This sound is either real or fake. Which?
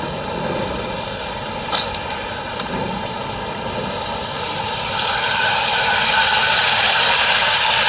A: real